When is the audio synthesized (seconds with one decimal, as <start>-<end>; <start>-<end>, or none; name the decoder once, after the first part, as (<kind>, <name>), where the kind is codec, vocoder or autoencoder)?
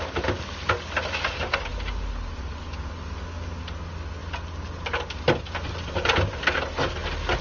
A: none